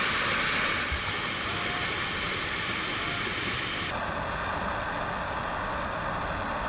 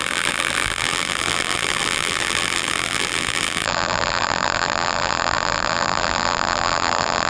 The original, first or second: first